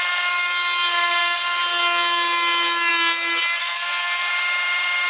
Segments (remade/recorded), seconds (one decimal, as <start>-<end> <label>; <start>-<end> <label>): 0.0-3.6 recorded; 3.6-4.3 remade; 4.3-5.1 recorded